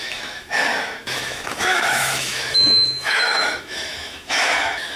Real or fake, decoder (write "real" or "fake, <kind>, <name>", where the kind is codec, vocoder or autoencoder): fake, autoencoder, DAC-VAE